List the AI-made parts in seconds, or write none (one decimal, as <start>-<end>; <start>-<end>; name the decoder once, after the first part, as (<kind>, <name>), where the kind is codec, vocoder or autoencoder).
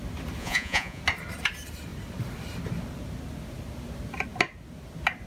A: 0.4-1.0 (vocoder, Vocos)